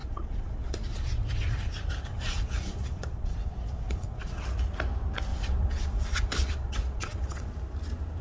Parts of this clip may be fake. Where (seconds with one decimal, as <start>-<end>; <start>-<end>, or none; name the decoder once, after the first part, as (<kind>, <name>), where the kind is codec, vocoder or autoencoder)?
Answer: 0.0-1.7 (vocoder, Vocos); 2.1-4.4; 5.3-7.5